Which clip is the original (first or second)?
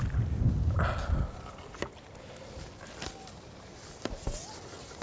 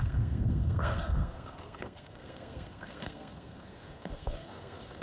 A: first